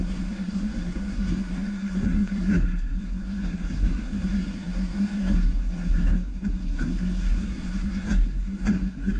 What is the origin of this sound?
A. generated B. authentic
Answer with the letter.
A